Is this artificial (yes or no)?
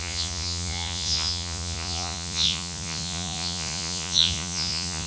yes